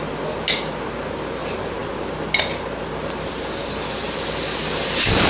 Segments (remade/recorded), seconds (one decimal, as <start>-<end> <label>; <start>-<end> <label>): 0.0-5.3 recorded